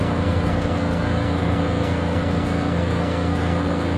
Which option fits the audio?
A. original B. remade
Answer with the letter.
B